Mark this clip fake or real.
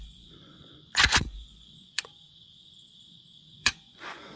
fake